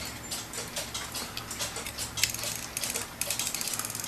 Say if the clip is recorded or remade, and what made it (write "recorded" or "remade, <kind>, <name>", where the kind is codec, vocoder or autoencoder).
recorded